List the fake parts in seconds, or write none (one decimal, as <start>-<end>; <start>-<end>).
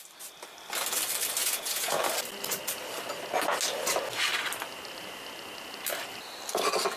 1.4-2.0